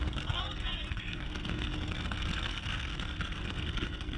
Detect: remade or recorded remade